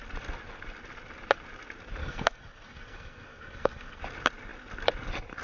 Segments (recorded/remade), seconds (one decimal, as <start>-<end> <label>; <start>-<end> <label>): 0.0-2.0 recorded; 2.0-4.0 remade; 4.0-5.4 recorded